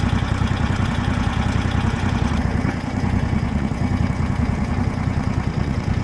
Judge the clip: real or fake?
fake